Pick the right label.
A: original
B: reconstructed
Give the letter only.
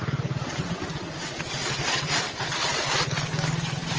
A